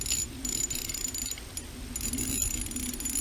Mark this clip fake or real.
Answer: real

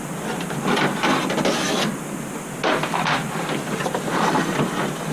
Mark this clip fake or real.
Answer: real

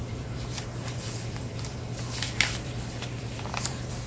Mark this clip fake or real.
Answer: fake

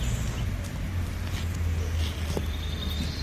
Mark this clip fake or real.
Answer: real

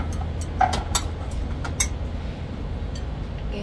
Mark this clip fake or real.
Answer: real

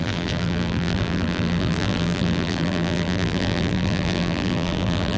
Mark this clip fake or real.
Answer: fake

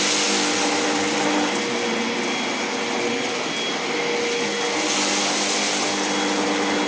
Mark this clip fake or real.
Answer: real